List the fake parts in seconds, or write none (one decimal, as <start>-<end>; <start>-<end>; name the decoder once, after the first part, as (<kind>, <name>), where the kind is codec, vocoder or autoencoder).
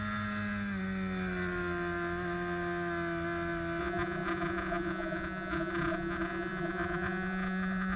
3.8-8.0 (vocoder, Vocos)